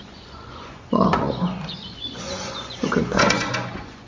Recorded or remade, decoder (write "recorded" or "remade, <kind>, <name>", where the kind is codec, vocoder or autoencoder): remade, vocoder, Vocos